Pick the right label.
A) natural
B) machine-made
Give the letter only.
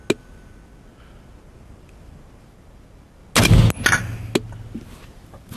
A